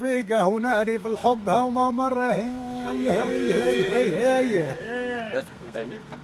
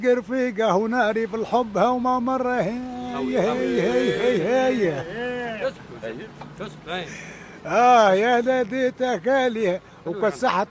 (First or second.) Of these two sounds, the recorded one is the second